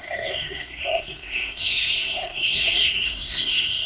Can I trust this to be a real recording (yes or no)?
no